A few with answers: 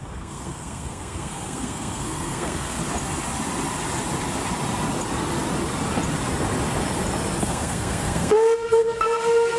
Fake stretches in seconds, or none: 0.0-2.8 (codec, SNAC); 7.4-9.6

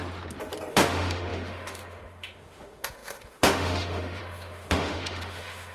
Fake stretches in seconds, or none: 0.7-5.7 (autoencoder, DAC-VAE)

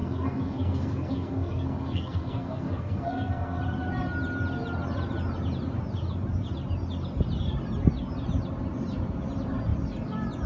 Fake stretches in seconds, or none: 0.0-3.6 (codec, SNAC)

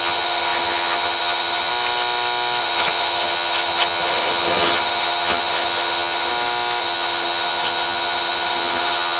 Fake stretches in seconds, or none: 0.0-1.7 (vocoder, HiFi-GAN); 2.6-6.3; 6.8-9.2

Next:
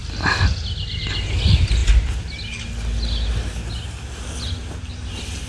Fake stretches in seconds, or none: none